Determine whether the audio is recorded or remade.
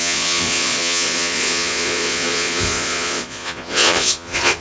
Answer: remade